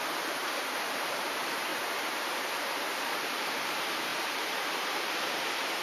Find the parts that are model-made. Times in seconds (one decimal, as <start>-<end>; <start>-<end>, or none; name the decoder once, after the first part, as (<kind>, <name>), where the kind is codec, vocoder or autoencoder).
0.0-1.7 (vocoder, BigVGAN v2); 2.2-5.8